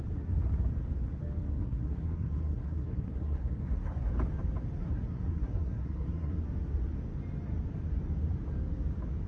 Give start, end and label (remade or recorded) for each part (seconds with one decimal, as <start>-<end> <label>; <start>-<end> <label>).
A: 0.0-1.5 recorded; 1.5-4.1 remade; 4.1-4.8 recorded; 4.8-6.4 remade; 6.4-9.3 recorded